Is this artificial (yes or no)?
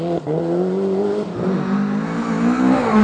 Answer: no